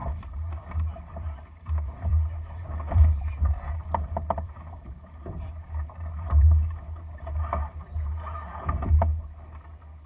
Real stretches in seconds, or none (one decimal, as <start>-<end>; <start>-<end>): 9.1-10.1